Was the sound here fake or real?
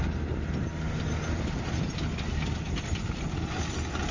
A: real